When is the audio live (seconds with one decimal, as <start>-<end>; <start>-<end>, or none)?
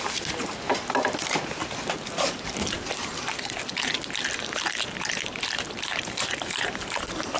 0.7-5.1